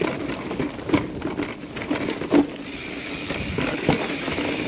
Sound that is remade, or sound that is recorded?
recorded